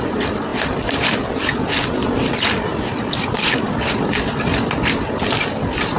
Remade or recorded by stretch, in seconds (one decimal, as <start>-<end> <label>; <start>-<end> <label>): 0.0-6.0 recorded